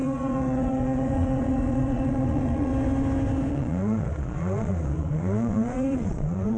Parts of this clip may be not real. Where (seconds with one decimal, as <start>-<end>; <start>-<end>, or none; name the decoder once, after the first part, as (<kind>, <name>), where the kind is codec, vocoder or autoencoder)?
0.0-2.7 (vocoder, Vocos); 3.5-6.6